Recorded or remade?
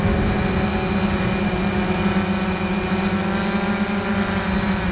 recorded